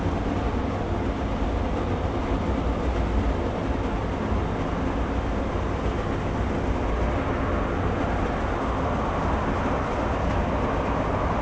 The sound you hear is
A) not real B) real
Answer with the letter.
B